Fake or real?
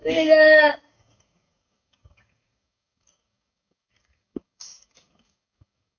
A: fake